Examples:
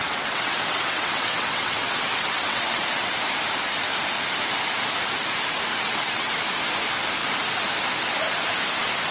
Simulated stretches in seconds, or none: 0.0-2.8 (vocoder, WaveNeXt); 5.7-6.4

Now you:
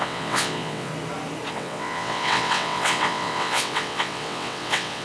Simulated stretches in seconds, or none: 0.0-0.9 (vocoder, WaveNeXt); 1.5-5.0